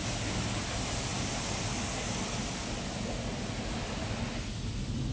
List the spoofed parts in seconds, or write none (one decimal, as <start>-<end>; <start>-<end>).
none